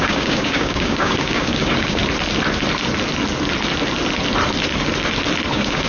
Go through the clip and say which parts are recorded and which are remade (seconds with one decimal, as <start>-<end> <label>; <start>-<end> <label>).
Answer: 0.0-2.0 remade; 2.0-5.5 recorded; 5.5-5.9 remade